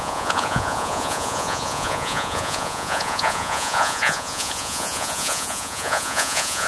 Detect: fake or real fake